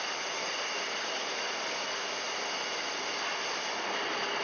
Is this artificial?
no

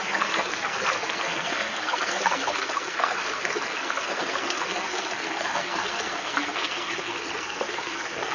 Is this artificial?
yes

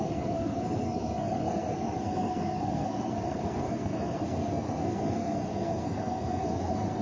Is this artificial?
yes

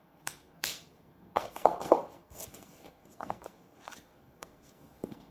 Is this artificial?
yes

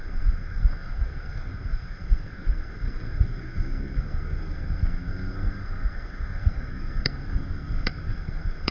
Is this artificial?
yes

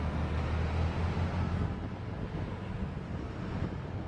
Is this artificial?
no